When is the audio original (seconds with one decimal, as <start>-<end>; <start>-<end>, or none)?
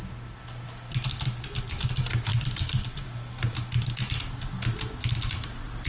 0.0-5.9